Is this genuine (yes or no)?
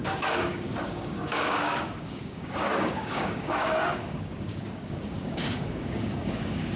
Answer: no